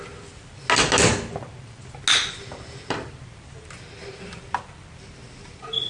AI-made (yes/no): no